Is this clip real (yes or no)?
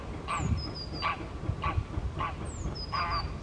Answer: yes